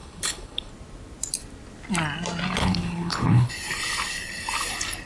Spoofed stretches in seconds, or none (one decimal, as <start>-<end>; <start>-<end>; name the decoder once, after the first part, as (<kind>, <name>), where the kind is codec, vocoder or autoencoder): 0.0-0.7 (codec, HILCodec); 2.6-3.5